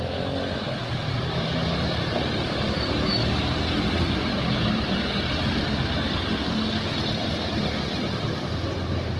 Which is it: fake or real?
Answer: real